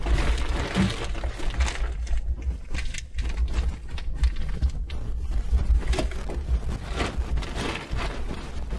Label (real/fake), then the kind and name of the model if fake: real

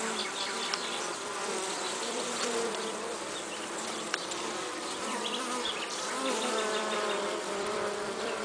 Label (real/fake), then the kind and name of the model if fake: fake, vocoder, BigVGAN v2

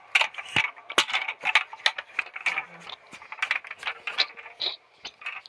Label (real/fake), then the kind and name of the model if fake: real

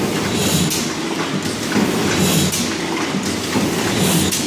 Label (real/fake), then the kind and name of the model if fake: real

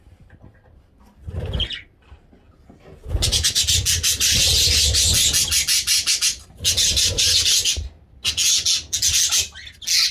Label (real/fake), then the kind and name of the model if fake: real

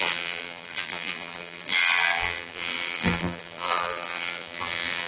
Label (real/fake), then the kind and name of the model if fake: fake, vocoder, BigVGAN v2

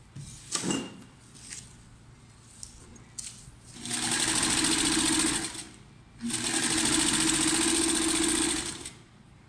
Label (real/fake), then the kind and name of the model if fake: real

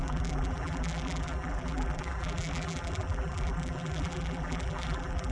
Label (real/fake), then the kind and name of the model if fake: fake, vocoder, BigVGAN v2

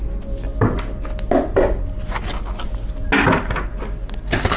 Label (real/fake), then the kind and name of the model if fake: real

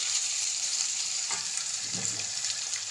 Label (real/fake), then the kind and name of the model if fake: fake, vocoder, BigVGAN v2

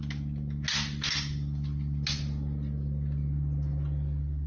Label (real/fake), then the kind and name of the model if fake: real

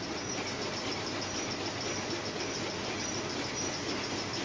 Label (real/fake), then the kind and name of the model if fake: real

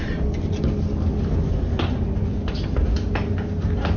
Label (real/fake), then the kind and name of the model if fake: real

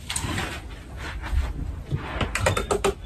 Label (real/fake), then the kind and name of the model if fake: real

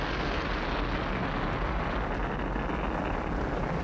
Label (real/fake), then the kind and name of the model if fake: real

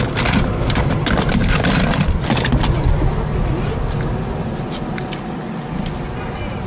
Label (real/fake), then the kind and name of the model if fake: real